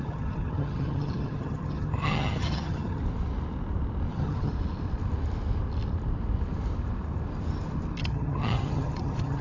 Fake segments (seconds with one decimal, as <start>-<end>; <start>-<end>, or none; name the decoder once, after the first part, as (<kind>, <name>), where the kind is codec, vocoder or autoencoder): 0.0-3.0 (vocoder, HiFi-GAN); 4.1-4.5; 8.0-9.4